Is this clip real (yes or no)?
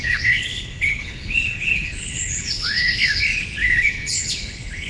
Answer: no